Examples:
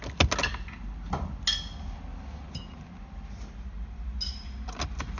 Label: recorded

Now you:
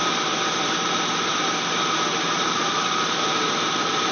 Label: remade